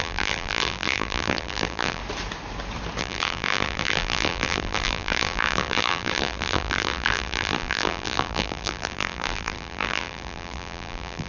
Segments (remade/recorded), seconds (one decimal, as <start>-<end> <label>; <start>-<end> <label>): 0.0-2.0 remade; 2.0-3.0 recorded; 3.0-11.3 remade